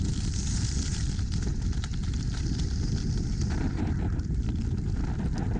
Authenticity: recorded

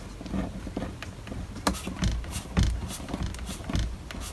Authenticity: recorded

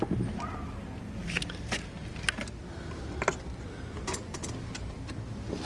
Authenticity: recorded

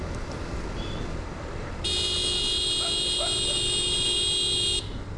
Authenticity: recorded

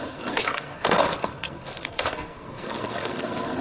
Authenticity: remade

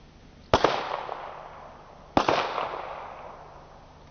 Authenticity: recorded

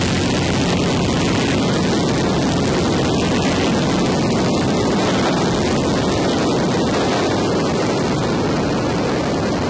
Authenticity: recorded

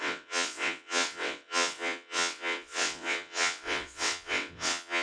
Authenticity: remade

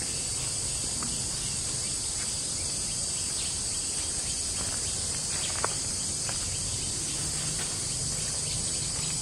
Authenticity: recorded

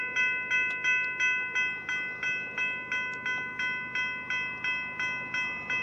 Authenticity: recorded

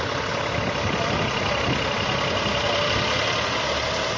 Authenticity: recorded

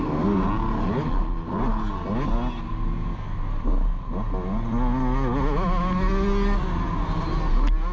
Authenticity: recorded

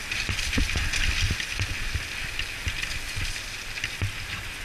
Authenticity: recorded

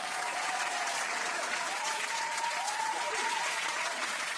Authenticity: remade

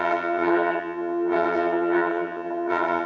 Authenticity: remade